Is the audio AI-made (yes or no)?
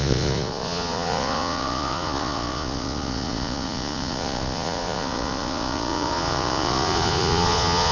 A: yes